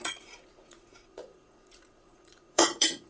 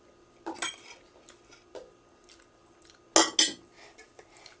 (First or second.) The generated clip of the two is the first